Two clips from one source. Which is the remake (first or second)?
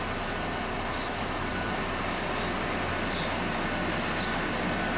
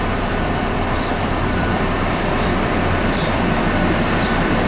second